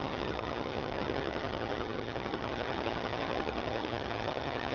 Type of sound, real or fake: fake